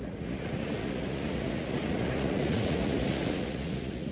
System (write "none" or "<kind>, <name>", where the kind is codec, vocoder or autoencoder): vocoder, Vocos